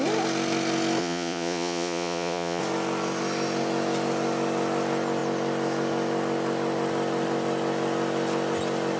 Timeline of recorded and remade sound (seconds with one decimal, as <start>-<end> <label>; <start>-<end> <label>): 0.0-1.0 recorded; 1.0-2.6 remade; 2.6-9.0 recorded